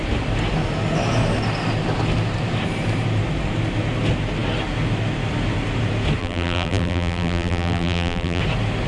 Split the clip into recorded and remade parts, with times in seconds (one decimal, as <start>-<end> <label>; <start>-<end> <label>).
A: 0.0-6.2 recorded; 6.2-8.4 remade; 8.4-8.9 recorded